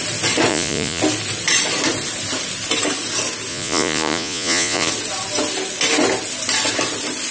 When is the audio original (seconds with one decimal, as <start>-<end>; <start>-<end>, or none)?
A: 0.0-0.5; 1.0-3.5; 4.9-7.3

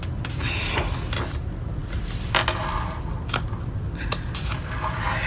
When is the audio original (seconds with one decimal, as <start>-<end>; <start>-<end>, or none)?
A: 0.0-5.3

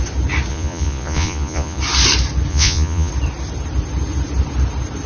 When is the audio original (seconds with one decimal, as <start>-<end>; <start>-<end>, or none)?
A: 0.0-0.5; 1.8-2.5; 3.1-5.1

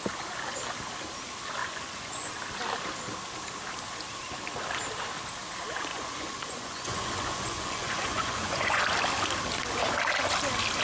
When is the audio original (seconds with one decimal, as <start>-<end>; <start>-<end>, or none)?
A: 0.0-1.6; 2.3-5.9; 8.8-10.8

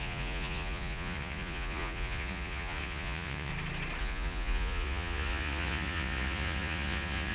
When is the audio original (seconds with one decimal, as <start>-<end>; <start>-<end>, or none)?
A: 3.5-4.0

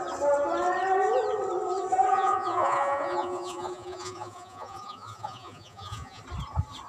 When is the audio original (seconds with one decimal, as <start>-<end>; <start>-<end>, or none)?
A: 0.0-2.1; 6.2-6.9